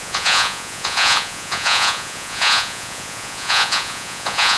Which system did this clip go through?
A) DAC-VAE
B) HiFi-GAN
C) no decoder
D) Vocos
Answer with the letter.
D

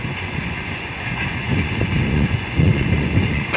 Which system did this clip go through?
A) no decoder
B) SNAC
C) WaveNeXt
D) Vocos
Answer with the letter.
D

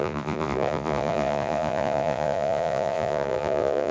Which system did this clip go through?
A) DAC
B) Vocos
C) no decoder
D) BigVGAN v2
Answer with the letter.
B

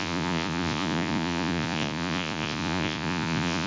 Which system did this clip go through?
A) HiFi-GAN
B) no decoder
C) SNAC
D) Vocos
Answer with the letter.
D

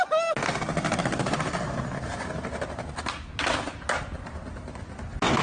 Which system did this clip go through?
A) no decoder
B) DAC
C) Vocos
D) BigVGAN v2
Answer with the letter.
A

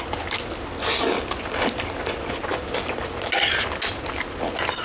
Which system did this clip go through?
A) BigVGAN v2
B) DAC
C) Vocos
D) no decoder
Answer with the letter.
D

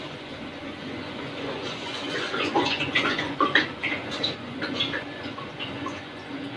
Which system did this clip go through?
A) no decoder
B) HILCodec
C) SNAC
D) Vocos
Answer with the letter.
D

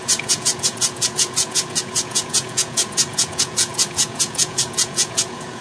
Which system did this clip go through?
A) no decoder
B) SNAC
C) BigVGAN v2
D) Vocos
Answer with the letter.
D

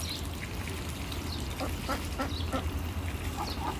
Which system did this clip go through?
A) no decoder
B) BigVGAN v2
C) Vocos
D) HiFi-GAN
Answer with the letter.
A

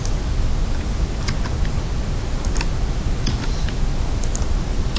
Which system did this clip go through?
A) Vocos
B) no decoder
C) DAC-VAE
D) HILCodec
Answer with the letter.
B